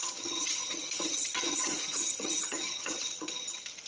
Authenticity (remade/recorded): remade